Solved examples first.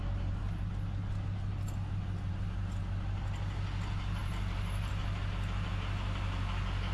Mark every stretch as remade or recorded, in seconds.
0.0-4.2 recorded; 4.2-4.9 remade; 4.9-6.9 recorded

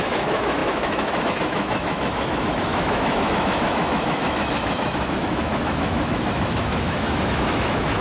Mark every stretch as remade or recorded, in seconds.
0.0-8.0 remade

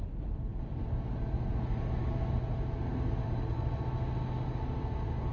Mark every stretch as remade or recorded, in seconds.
0.0-5.3 recorded

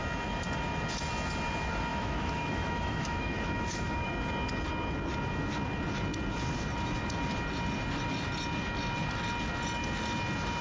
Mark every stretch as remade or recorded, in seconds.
0.0-1.9 recorded; 1.9-4.1 remade; 4.1-10.6 recorded

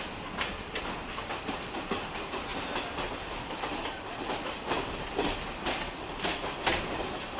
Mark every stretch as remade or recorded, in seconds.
0.0-7.4 recorded

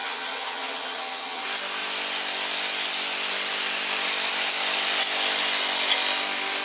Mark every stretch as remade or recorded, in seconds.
0.0-1.4 remade; 1.4-6.6 recorded